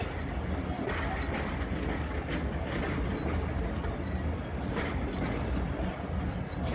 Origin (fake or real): real